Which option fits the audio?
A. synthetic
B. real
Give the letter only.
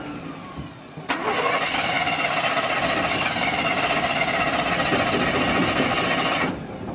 B